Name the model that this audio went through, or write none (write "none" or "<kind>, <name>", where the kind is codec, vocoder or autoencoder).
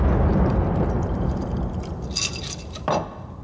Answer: vocoder, BigVGAN v2